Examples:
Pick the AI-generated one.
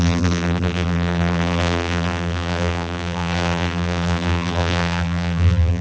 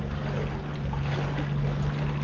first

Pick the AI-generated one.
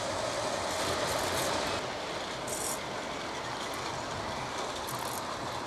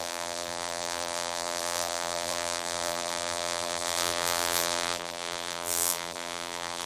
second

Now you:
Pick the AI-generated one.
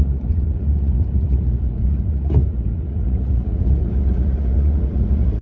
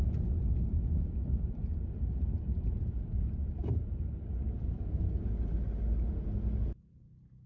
first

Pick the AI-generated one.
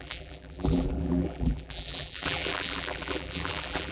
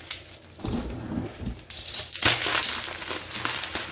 first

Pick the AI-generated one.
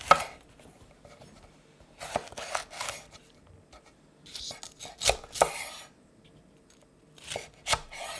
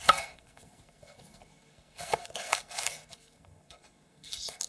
second